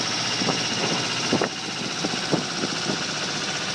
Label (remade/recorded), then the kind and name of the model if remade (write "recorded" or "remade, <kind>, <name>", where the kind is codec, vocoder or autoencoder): recorded